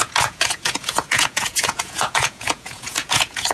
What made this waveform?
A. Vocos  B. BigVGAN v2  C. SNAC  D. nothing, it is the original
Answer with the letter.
A